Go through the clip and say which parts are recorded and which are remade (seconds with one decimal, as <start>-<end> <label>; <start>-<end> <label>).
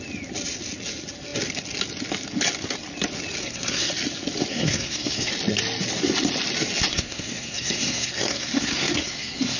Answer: 0.0-3.4 recorded; 3.4-3.9 remade; 3.9-4.5 recorded; 4.5-5.3 remade; 5.3-6.9 recorded; 6.9-9.6 remade